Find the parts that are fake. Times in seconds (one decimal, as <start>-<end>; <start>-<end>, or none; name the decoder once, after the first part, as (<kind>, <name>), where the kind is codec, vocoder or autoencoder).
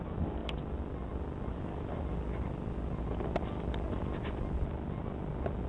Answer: none